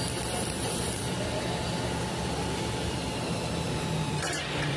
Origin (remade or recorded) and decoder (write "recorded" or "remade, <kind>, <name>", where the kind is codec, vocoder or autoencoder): remade, vocoder, BigVGAN v2